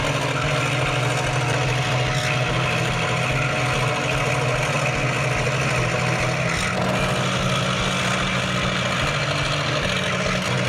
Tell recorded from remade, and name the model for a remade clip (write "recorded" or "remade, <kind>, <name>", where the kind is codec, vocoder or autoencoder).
recorded